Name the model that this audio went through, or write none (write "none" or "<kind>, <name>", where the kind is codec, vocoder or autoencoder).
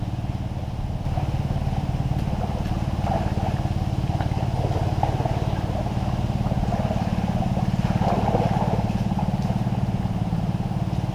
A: none